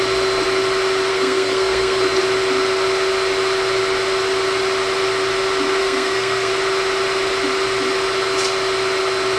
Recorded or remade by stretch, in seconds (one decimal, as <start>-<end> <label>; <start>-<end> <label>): 0.0-1.1 recorded; 1.1-2.0 remade; 2.0-5.8 recorded; 5.8-6.5 remade; 6.5-9.4 recorded